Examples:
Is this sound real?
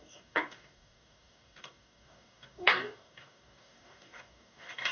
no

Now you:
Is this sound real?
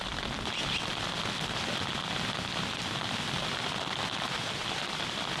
yes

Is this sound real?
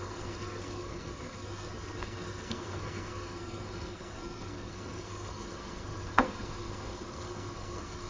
no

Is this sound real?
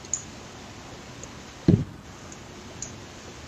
yes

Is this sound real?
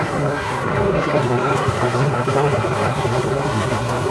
no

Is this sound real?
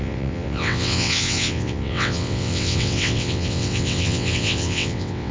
no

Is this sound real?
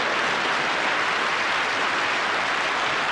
yes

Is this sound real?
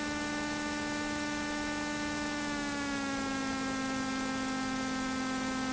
yes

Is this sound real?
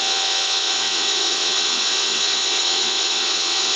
no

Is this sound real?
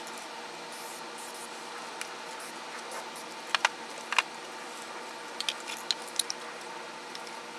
yes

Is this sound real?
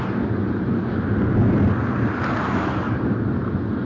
yes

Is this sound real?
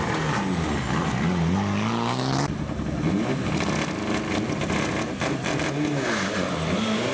yes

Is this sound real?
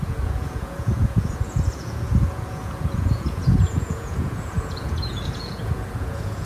no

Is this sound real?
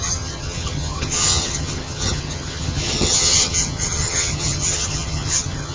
no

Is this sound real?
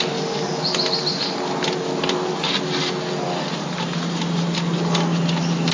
yes